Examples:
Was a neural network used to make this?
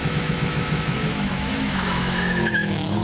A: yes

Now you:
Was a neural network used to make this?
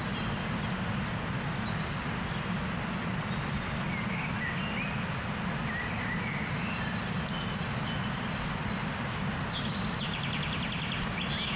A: no